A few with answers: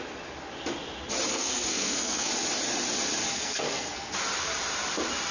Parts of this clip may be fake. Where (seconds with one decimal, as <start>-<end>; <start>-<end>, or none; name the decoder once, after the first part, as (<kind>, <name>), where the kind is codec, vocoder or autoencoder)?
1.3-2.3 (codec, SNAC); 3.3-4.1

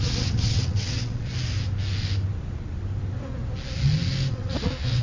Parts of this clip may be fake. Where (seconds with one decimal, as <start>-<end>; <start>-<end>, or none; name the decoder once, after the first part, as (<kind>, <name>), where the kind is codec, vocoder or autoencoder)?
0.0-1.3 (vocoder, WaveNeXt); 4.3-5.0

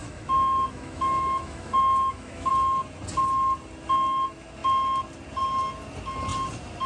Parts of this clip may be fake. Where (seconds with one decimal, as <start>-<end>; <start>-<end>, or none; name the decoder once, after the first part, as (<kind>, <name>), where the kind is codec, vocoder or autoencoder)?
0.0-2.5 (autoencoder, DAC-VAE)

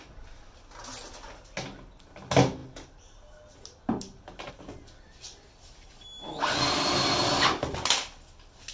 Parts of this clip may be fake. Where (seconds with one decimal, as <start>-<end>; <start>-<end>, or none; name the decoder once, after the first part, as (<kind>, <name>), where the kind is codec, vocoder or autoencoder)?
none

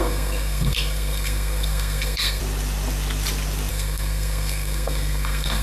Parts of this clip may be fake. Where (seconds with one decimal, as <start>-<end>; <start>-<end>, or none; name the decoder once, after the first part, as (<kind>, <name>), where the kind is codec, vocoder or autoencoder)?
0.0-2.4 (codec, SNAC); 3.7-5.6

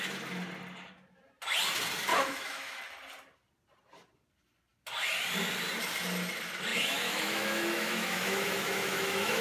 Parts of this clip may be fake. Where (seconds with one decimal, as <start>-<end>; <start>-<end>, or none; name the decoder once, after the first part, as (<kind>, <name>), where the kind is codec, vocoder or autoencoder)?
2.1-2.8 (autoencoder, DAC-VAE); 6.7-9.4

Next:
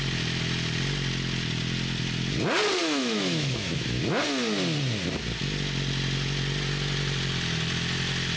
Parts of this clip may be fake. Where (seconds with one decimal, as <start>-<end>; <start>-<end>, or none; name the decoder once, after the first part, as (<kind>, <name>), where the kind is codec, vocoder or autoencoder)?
2.8-4.0 (autoencoder, DAC-VAE)